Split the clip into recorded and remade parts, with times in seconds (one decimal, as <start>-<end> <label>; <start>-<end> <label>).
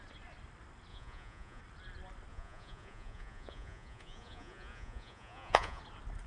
0.0-0.9 recorded; 0.9-1.6 remade; 1.6-2.3 recorded; 2.3-5.8 remade; 5.8-6.3 recorded